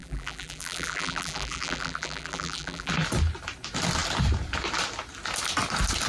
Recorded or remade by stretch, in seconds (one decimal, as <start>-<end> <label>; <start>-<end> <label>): 0.0-2.9 remade; 2.9-6.1 recorded